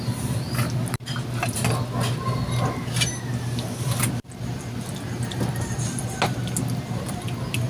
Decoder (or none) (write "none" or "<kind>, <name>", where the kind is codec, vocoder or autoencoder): none